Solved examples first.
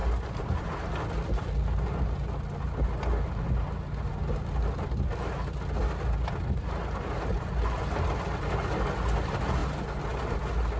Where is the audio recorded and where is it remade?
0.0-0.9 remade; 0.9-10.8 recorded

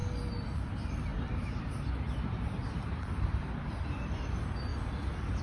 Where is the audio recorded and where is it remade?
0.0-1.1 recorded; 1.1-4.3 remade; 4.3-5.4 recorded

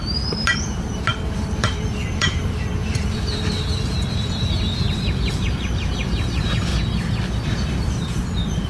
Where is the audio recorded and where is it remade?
0.0-6.7 remade; 6.7-7.4 recorded; 7.4-8.7 remade

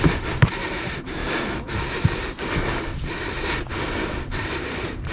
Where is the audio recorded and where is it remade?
0.0-1.2 remade; 1.2-4.3 recorded; 4.3-5.1 remade

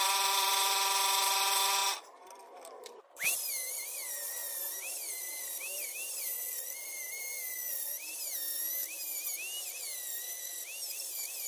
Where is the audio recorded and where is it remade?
0.0-4.4 remade; 4.4-4.9 recorded; 4.9-6.3 remade; 6.3-10.9 recorded; 10.9-11.5 remade

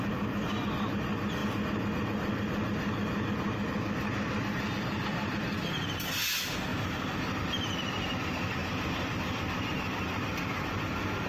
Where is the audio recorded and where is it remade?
0.0-8.6 recorded; 8.6-9.2 remade; 9.2-11.3 recorded